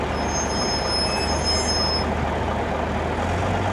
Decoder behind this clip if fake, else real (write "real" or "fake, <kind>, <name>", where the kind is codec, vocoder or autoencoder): real